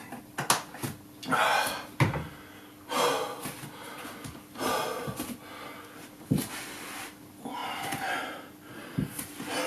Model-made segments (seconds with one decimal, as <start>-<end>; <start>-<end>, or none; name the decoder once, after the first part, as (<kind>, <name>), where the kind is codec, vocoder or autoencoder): none